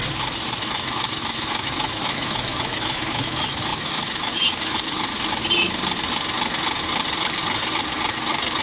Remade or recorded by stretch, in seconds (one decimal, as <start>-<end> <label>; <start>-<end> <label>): 0.0-0.6 recorded; 0.6-5.1 remade; 5.1-8.6 recorded